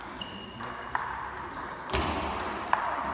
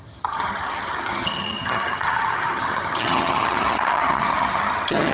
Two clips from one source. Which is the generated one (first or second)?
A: second